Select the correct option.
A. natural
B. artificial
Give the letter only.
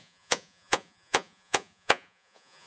B